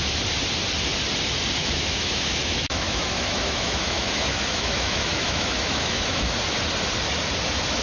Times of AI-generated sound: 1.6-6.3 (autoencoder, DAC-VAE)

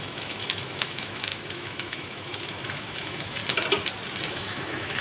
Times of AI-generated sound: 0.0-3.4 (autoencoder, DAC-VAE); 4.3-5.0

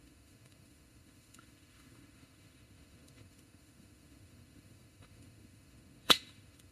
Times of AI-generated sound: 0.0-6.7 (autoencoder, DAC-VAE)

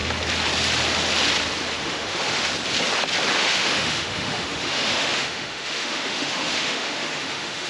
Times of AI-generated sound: 1.8-2.5 (autoencoder, DAC-VAE); 3.4-7.7

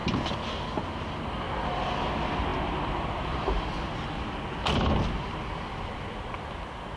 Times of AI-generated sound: none

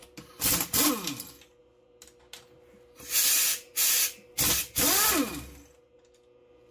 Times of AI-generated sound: none

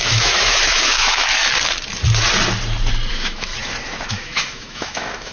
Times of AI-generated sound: 0.0-1.4 (autoencoder, DAC-VAE); 3.1-3.5; 4.1-5.3